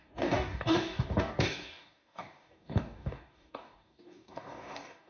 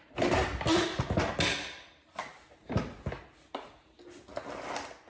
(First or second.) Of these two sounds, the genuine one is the second